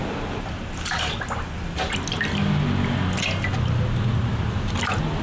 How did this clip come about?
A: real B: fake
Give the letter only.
A